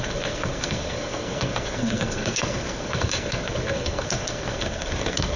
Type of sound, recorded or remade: remade